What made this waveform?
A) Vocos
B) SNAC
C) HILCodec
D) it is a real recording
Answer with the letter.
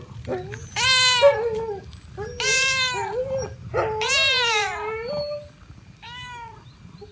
D